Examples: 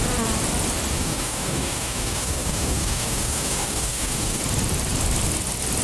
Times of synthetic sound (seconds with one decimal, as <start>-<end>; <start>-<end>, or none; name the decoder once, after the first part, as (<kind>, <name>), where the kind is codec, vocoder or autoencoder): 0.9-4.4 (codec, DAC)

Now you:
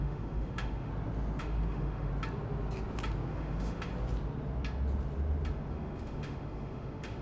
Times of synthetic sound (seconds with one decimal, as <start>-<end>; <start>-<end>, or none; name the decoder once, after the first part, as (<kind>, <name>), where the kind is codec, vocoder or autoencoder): 0.0-0.9 (autoencoder, DAC-VAE); 1.4-2.1; 3.3-3.9; 5.7-7.2

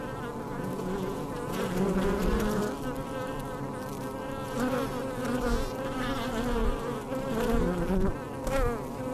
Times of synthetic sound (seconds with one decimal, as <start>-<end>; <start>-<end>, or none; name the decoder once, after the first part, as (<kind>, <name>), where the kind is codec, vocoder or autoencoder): 0.5-1.7 (vocoder, Vocos)

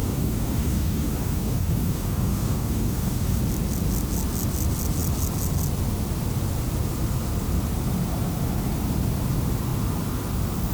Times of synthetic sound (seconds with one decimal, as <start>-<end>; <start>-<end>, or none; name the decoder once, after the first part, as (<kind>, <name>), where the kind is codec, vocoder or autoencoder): 0.0-3.4 (codec, DAC)

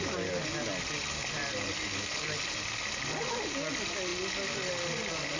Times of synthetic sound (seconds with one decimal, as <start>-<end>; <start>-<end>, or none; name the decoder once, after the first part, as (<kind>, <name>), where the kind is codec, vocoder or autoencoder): none

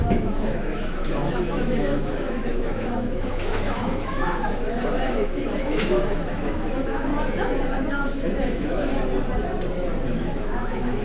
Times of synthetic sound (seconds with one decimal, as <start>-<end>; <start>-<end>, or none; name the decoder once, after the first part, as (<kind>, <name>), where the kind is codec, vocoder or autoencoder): 0.0-7.1 (autoencoder, DAC-VAE); 7.9-8.9; 10.2-11.0

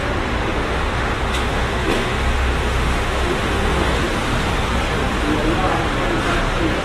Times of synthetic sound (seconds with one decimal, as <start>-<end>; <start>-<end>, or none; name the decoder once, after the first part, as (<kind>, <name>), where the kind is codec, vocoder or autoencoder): 0.4-4.0 (autoencoder, DAC-VAE)